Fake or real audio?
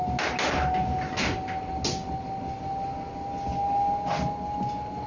real